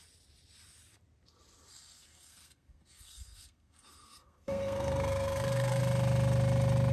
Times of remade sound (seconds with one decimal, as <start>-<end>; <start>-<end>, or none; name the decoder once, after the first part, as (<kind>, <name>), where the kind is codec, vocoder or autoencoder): 1.7-5.8 (codec, SNAC)